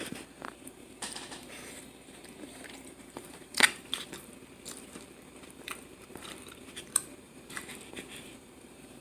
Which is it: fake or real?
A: fake